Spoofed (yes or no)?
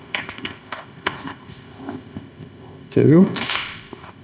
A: yes